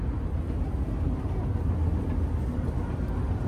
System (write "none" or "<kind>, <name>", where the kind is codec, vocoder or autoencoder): none